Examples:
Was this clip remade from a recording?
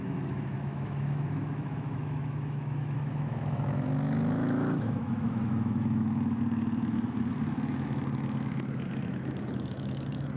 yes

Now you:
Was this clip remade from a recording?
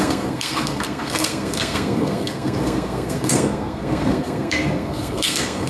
yes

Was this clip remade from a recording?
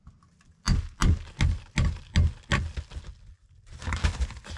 no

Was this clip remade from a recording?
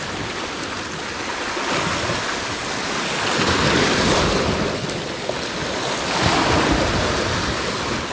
no